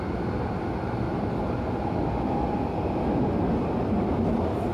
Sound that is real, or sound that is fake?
real